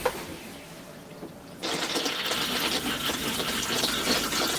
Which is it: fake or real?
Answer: real